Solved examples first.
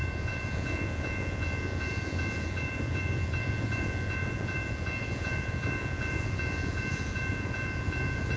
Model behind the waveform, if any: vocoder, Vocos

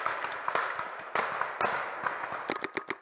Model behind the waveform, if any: none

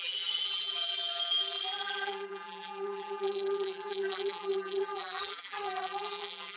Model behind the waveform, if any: vocoder, BigVGAN v2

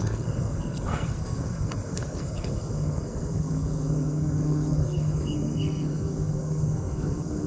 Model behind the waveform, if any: codec, SNAC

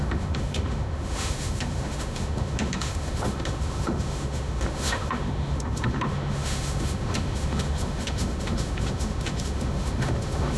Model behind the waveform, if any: autoencoder, DAC-VAE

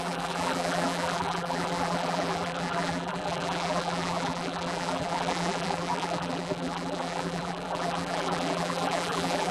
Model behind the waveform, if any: vocoder, BigVGAN v2